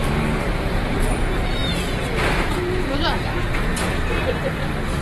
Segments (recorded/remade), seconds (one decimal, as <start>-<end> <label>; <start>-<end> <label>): 0.0-5.0 remade